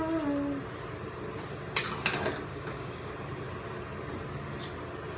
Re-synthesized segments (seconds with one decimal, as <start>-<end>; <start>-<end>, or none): 2.5-3.1